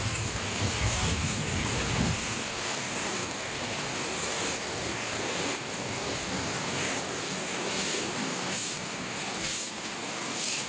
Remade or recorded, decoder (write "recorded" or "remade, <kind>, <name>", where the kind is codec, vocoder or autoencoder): remade, codec, DAC